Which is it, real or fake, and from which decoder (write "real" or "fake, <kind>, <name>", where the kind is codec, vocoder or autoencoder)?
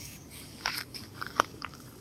fake, codec, DAC